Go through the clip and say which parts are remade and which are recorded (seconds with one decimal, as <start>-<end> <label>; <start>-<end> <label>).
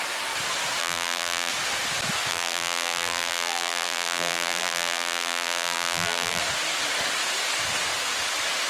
0.0-0.8 recorded; 0.8-1.5 remade; 1.5-2.3 recorded; 2.3-6.4 remade; 6.4-8.7 recorded